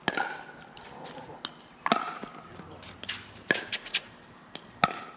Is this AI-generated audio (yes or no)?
no